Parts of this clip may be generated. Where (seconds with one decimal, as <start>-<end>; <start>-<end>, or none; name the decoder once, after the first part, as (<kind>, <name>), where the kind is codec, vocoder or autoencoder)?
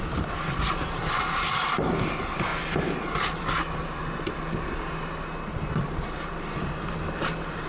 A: 0.0-2.5 (vocoder, BigVGAN v2); 5.6-7.7